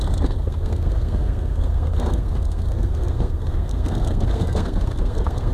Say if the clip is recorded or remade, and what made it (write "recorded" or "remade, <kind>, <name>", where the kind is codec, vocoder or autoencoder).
remade, codec, SNAC